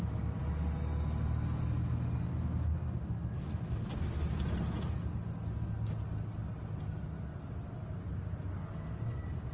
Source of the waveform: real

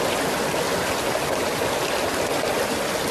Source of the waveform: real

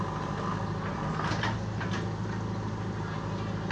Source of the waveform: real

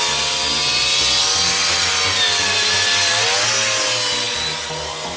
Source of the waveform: real